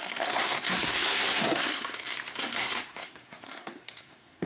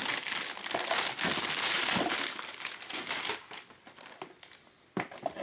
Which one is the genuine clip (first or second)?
second